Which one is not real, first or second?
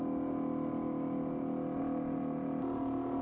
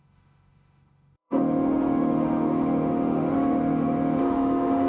second